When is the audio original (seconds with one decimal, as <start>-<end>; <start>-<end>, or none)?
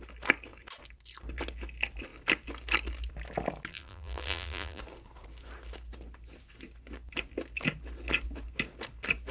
0.0-3.7; 4.8-9.3